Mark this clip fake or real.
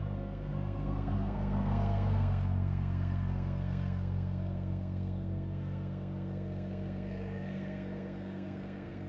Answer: fake